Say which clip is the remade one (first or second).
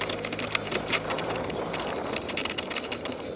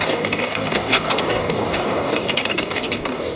second